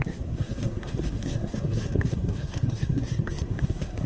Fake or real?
fake